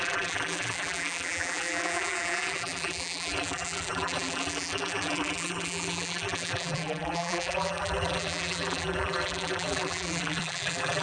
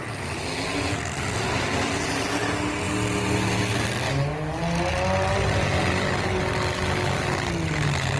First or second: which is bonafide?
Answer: second